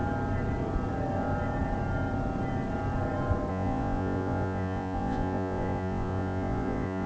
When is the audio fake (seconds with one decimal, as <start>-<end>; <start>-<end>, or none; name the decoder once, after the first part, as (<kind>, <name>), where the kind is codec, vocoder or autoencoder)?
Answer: 3.5-7.1 (vocoder, Vocos)